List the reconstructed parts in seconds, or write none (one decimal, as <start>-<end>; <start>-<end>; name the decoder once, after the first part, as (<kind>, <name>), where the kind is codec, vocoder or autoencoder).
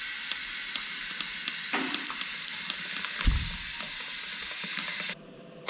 1.0-2.6 (vocoder, BigVGAN v2); 4.7-5.7